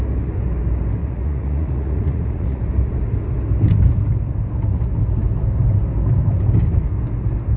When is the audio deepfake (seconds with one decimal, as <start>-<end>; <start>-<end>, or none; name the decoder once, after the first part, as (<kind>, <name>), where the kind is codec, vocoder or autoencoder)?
1.0-2.6 (vocoder, Vocos)